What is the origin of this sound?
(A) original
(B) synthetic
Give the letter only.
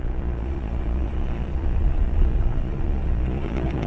B